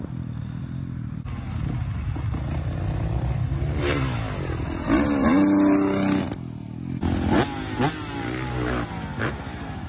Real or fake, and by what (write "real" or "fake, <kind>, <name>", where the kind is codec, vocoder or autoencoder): real